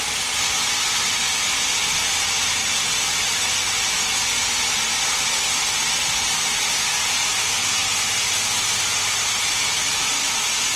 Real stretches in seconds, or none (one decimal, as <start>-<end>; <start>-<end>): 0.0-10.8